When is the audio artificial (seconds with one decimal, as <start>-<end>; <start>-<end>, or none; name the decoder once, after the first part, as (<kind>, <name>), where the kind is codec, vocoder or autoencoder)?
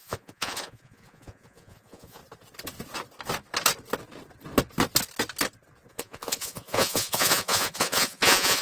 0.0-2.2 (vocoder, Vocos); 5.9-8.6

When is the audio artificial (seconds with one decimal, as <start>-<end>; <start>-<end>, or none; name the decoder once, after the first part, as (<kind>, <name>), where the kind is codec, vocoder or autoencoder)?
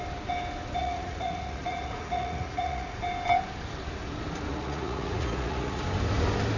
0.8-3.0 (vocoder, Vocos); 4.5-5.8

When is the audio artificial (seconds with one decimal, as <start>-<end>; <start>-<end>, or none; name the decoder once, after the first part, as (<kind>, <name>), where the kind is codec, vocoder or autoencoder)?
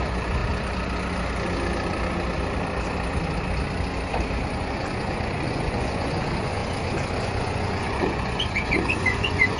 0.0-0.4 (vocoder, Vocos); 4.5-6.6; 7.2-9.6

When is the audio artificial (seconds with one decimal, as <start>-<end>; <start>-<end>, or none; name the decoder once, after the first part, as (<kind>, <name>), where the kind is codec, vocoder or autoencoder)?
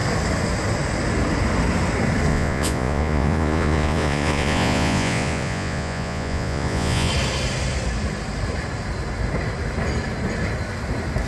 2.3-7.1 (vocoder, Vocos)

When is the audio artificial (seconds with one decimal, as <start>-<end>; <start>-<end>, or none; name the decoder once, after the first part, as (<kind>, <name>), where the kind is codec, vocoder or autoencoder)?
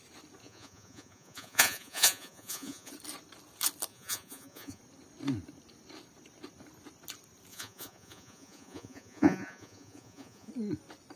0.4-2.9 (vocoder, Vocos); 3.9-4.8; 7.5-10.5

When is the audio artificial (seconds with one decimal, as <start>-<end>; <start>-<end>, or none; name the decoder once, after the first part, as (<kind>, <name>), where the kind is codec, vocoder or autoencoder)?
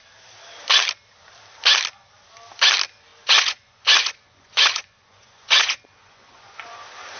3.1-6.8 (vocoder, Vocos)